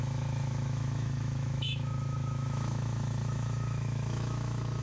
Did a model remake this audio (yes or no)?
yes